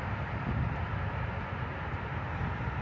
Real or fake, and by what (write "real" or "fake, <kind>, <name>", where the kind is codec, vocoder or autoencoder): real